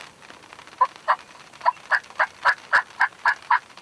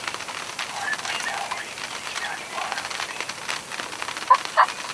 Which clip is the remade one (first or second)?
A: first